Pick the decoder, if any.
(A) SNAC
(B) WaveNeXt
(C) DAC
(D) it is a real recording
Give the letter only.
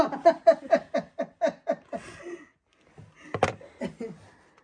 D